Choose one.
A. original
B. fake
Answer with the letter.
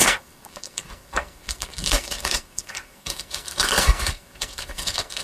B